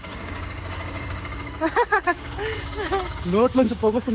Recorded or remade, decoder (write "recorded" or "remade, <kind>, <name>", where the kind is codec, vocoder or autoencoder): remade, codec, DAC